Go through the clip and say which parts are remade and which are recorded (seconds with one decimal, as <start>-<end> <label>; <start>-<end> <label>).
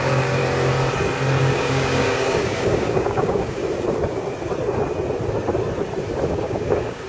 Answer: 0.0-0.4 remade; 0.4-1.4 recorded; 1.4-3.6 remade; 3.6-6.2 recorded; 6.2-7.1 remade